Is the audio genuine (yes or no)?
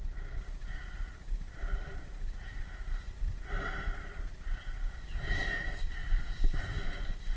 yes